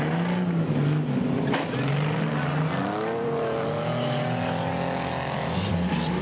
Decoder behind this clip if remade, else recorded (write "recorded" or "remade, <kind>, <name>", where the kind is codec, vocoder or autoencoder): recorded